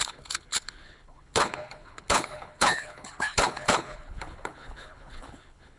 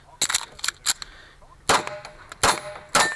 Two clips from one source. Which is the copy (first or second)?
first